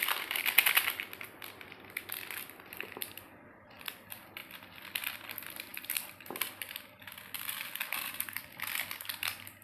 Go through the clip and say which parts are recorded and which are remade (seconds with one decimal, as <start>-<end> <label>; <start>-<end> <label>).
0.0-9.6 recorded